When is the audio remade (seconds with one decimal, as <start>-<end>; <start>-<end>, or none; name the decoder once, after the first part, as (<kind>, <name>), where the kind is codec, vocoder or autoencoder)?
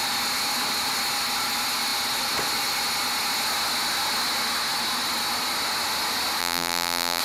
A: 6.4-7.2 (vocoder, BigVGAN v2)